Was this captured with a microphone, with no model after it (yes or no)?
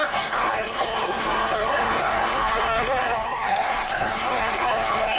no